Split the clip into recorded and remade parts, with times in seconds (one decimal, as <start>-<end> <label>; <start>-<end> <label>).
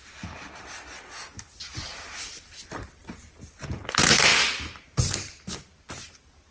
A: 0.0-6.5 recorded